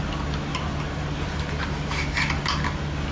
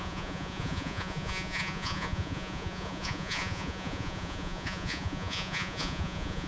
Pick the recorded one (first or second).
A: first